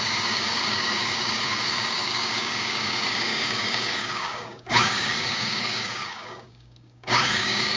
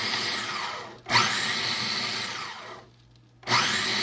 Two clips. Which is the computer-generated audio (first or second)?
first